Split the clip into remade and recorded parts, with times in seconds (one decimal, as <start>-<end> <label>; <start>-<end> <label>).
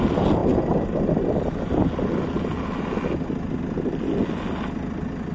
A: 0.0-5.3 recorded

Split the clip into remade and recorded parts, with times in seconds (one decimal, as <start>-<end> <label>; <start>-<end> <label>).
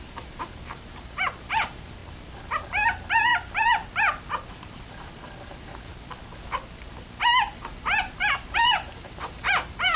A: 0.0-2.0 remade; 2.0-2.7 recorded; 2.7-3.3 remade; 3.3-4.5 recorded; 4.5-5.9 remade; 5.9-7.5 recorded; 7.5-10.0 remade